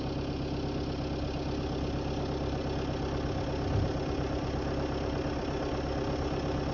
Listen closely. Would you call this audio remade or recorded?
recorded